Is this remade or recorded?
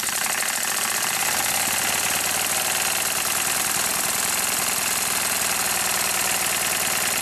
recorded